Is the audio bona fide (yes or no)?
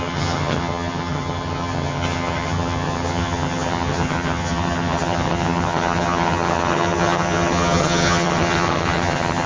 no